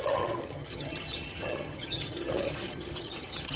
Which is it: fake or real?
fake